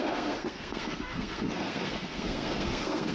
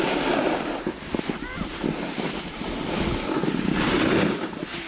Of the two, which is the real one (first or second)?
second